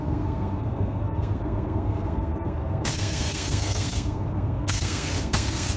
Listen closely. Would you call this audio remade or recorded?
remade